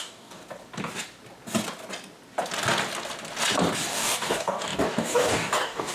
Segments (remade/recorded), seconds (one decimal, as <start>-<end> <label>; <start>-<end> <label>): 0.0-0.4 remade; 0.4-3.9 recorded; 3.9-5.9 remade

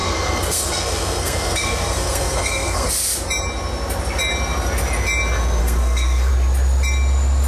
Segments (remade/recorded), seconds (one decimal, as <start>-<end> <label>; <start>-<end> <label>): 0.0-2.9 remade; 2.9-5.6 recorded; 5.6-6.3 remade; 6.3-7.5 recorded

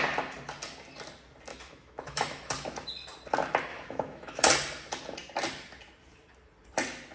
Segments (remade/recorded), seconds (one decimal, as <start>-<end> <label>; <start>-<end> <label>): 0.0-1.5 recorded; 1.5-2.5 remade; 2.5-3.7 recorded; 3.7-4.5 remade; 4.5-7.1 recorded